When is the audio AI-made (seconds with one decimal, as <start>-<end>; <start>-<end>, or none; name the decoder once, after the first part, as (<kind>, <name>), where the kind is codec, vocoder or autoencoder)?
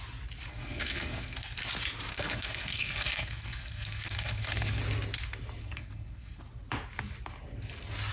0.5-1.6 (codec, SNAC); 2.1-4.8; 5.6-6.4